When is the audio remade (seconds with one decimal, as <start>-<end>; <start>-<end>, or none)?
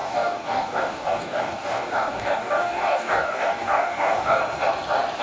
0.0-4.4